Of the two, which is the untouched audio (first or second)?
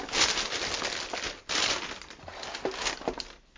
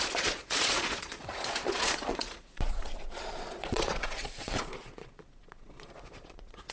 first